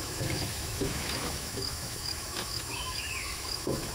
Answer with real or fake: fake